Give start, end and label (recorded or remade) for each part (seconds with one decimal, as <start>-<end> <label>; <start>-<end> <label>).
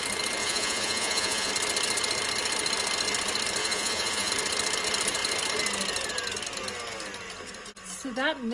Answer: 0.0-0.4 recorded; 0.4-1.5 remade; 1.5-3.6 recorded; 3.6-4.3 remade; 4.3-8.5 recorded